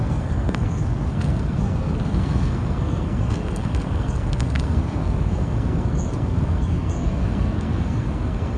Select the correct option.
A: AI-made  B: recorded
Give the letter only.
A